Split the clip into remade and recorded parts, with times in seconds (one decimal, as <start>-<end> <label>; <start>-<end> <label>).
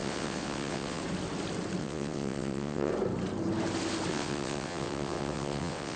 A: 0.0-1.0 remade; 1.0-1.8 recorded; 1.8-2.9 remade; 2.9-4.1 recorded; 4.1-6.0 remade